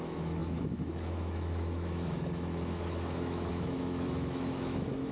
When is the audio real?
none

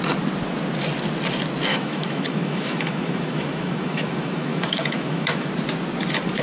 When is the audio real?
0.0-1.7; 5.5-6.4

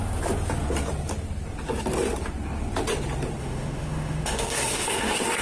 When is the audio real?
0.0-3.4

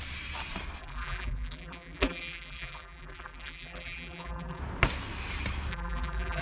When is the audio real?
0.0-0.8; 4.6-5.7